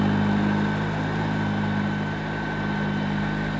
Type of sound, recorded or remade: recorded